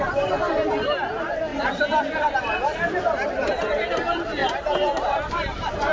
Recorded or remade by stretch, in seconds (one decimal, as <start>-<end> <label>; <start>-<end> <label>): 0.0-1.5 remade; 1.5-2.4 recorded; 2.4-5.9 remade